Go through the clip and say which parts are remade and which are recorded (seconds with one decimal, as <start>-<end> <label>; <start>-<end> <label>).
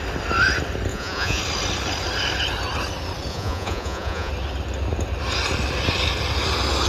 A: 0.0-0.9 recorded; 0.9-1.4 remade; 1.4-3.3 recorded; 3.3-4.3 remade; 4.3-6.9 recorded